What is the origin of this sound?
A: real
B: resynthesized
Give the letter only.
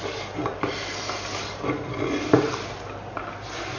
A